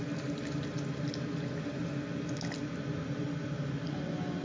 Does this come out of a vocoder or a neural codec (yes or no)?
no